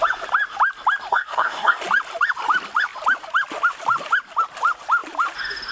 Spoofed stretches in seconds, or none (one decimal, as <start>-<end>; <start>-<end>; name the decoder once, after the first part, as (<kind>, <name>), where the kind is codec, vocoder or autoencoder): 1.1-1.8 (codec, SNAC)